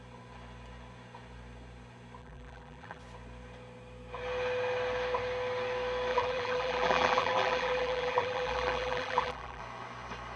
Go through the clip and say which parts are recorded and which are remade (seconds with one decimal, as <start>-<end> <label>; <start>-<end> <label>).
0.0-2.2 recorded; 2.2-3.0 remade; 3.0-6.1 recorded; 6.1-9.6 remade; 9.6-10.4 recorded